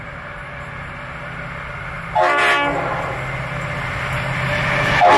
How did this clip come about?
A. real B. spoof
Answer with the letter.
A